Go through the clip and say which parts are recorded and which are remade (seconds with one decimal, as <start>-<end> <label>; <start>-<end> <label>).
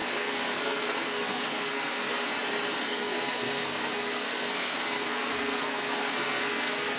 0.0-2.3 remade; 2.3-2.7 recorded; 2.7-7.0 remade